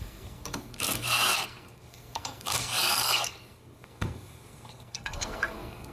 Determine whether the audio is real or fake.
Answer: fake